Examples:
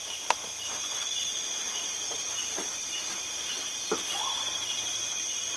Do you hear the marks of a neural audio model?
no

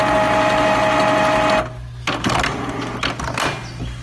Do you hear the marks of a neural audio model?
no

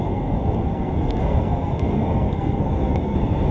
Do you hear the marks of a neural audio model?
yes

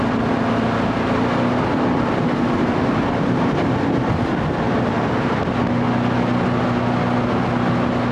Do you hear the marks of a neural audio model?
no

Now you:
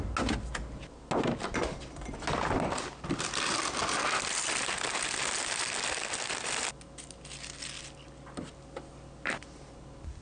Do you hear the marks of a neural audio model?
no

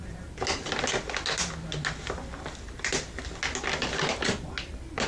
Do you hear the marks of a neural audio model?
no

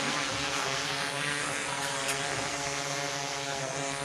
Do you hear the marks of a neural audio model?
yes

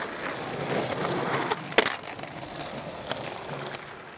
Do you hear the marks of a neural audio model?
no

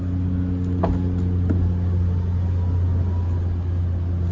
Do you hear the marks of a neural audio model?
no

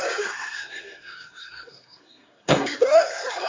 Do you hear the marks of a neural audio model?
yes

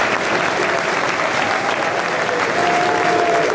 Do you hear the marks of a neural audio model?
no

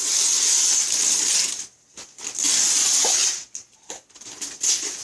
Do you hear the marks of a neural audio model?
no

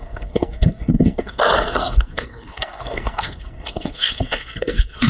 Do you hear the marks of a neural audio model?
yes